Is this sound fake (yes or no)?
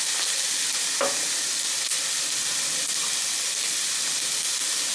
no